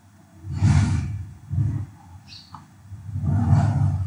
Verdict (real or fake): real